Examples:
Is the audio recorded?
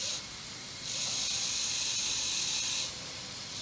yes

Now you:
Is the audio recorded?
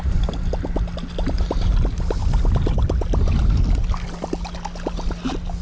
yes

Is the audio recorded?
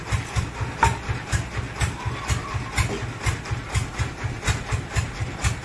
yes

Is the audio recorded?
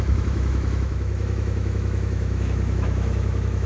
no